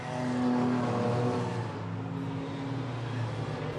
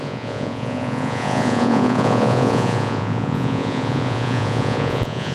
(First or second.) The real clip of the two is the first